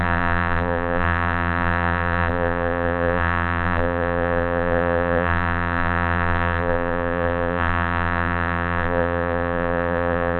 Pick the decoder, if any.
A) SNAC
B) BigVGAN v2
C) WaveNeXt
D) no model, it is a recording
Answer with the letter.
B